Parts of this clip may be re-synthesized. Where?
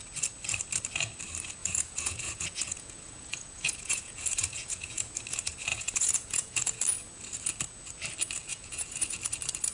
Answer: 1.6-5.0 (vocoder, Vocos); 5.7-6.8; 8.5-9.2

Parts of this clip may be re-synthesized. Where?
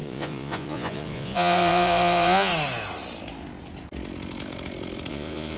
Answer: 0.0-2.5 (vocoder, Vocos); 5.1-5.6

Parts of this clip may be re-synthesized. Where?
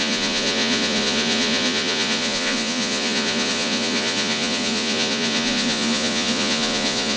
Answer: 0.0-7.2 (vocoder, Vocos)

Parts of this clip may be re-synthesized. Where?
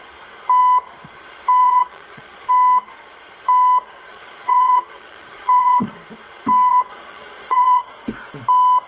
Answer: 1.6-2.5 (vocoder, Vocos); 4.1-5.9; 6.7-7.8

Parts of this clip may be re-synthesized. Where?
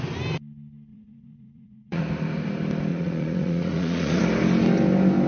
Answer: 0.9-2.0 (vocoder, Vocos); 2.9-4.2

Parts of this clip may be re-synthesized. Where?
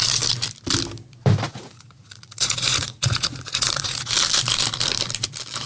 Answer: 1.5-4.1 (vocoder, Vocos)